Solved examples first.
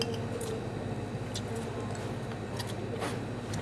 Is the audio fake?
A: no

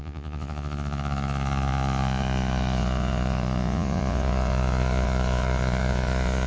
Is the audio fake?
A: yes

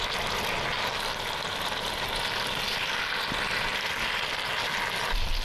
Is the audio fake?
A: no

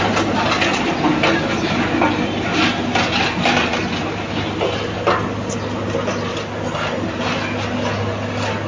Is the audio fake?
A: no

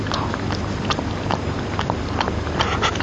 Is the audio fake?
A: no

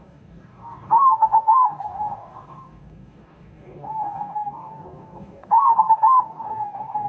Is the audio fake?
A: yes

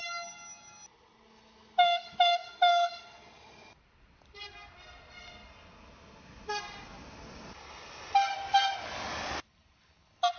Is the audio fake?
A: no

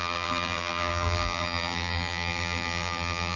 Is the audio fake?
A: yes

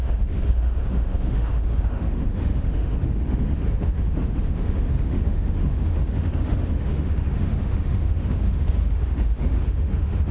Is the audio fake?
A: yes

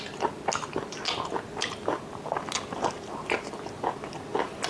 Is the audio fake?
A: no